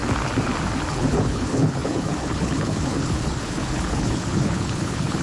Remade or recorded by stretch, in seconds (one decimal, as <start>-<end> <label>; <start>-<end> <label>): 0.0-0.9 recorded; 0.9-5.2 remade